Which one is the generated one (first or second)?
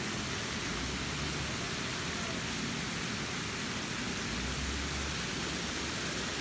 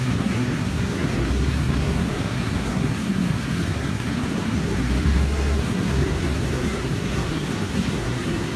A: second